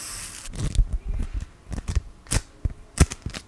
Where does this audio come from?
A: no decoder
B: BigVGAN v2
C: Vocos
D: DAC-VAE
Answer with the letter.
A